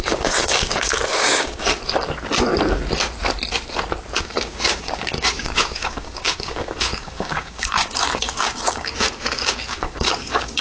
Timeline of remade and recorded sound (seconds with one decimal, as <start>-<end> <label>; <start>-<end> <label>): 0.0-1.8 remade; 1.8-4.2 recorded; 4.2-10.6 remade